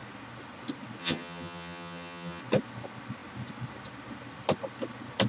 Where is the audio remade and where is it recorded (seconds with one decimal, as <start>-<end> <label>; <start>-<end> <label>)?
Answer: 0.0-1.0 recorded; 1.0-2.4 remade; 2.4-5.3 recorded